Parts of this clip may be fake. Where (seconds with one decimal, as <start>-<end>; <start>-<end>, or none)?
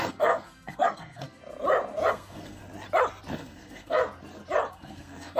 0.0-1.4; 2.1-2.6; 3.3-4.0; 4.7-5.4